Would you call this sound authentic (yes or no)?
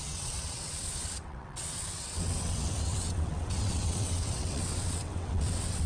no